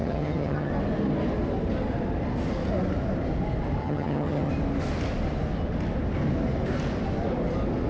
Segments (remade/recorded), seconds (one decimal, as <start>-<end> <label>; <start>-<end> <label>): 0.0-0.7 remade; 0.7-3.8 recorded; 3.8-4.5 remade; 4.5-7.9 recorded